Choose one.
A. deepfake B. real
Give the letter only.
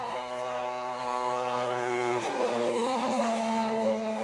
A